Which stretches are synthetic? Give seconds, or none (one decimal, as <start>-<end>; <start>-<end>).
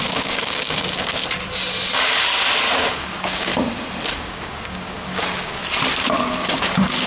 0.0-1.2; 2.7-3.5; 4.1-5.6; 6.5-7.1